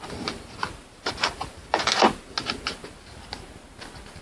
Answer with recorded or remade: recorded